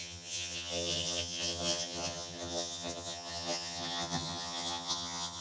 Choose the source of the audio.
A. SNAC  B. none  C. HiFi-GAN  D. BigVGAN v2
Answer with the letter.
C